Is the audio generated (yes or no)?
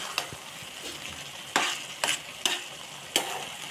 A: no